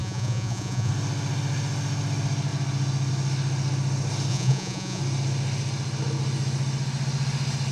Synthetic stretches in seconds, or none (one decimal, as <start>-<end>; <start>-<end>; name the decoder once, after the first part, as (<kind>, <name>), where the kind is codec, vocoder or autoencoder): 0.0-0.9 (vocoder, Vocos); 4.3-5.0